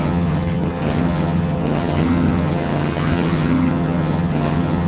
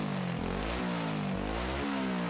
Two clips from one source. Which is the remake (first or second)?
first